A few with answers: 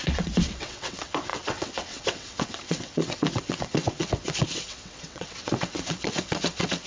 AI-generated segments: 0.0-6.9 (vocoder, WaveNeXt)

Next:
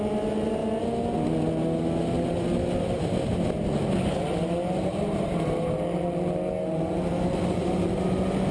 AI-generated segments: none

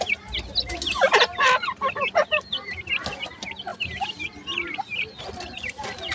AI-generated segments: none

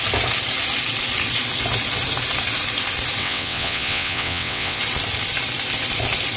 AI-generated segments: 3.2-4.8 (vocoder, WaveNeXt)

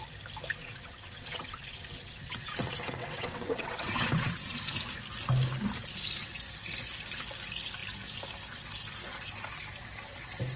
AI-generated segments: 0.6-4.5 (vocoder, WaveNeXt)

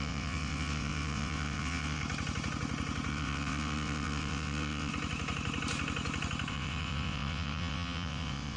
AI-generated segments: 0.0-2.0 (vocoder, WaveNeXt); 3.1-4.9; 6.5-8.6